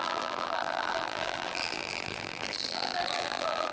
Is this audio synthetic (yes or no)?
yes